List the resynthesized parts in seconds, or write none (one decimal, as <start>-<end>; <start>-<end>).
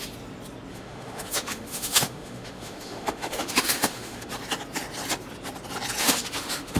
0.7-4.3; 6.0-6.8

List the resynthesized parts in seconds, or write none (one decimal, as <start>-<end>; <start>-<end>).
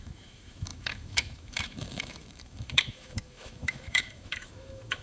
0.0-5.0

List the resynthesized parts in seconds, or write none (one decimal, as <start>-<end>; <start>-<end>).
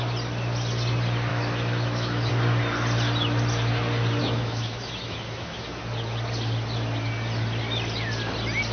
1.3-2.3; 4.2-5.8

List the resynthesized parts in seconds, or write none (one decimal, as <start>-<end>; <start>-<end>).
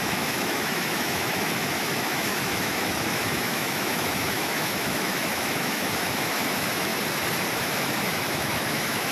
0.0-6.9; 7.6-9.1